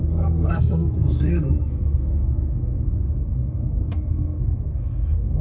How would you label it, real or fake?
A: fake